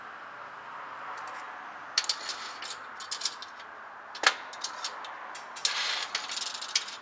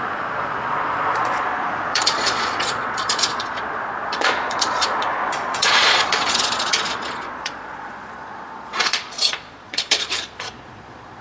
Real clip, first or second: first